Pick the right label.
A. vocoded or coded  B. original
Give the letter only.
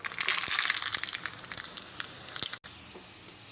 B